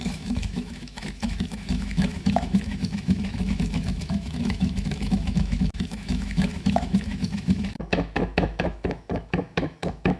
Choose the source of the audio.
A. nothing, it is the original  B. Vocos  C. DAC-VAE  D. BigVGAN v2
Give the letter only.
C